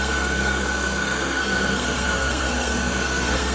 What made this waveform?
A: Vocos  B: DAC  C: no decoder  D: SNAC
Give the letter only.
D